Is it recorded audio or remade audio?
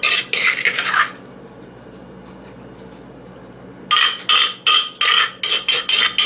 recorded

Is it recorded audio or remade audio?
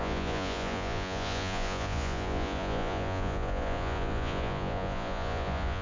remade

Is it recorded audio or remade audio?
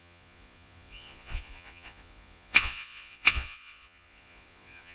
remade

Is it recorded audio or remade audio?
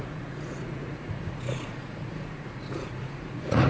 remade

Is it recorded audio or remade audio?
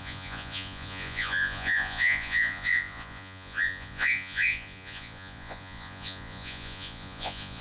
remade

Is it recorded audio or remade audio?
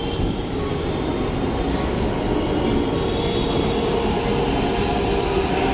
recorded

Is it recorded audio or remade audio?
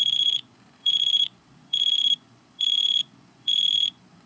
remade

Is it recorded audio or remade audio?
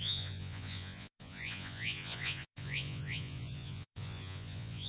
remade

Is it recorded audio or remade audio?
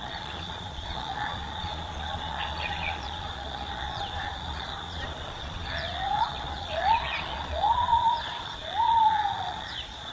remade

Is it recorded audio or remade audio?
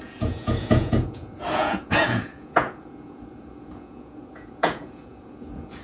remade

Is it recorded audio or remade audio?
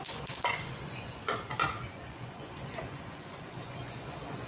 remade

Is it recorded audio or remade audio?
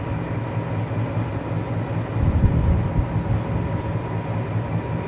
recorded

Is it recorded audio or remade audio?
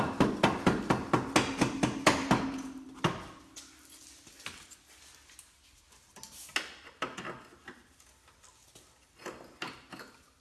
recorded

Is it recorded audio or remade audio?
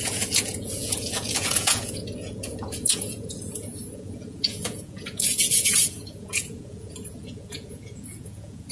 remade